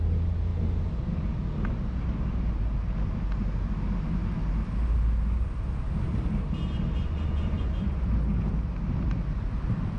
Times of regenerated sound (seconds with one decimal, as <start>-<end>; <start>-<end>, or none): 7.0-8.0